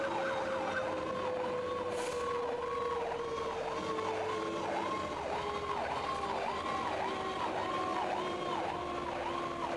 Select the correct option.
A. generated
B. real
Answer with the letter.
B